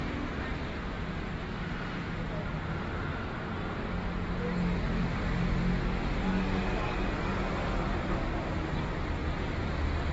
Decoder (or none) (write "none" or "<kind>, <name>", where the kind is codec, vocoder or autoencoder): none